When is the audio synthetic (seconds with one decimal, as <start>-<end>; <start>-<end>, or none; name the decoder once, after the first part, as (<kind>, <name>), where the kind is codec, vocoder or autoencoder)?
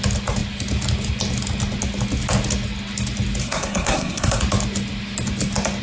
3.4-4.4 (codec, SNAC)